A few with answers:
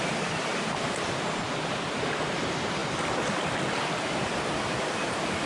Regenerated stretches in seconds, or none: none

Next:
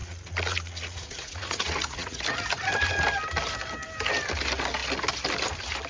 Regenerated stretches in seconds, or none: 0.0-2.2 (vocoder, Vocos)

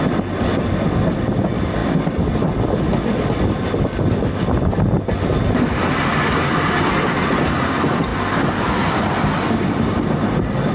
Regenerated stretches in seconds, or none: none

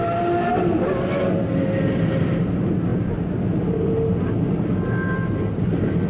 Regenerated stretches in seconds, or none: none

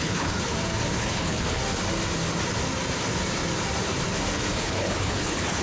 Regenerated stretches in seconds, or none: 0.0-0.5 (codec, HILCodec); 1.0-1.6; 4.5-5.6

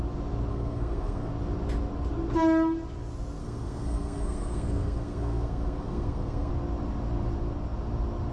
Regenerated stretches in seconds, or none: 0.5-1.3 (codec, SNAC); 3.4-6.5